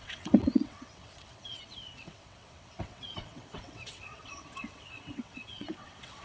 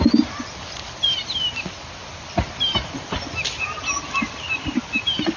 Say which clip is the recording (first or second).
second